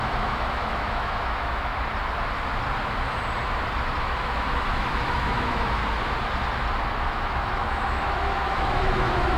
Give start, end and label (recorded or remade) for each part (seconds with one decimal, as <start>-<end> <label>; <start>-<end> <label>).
0.0-1.7 remade; 1.7-4.0 recorded; 4.0-5.8 remade; 5.8-7.0 recorded; 7.0-9.4 remade